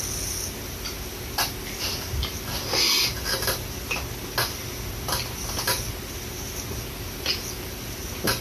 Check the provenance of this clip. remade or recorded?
recorded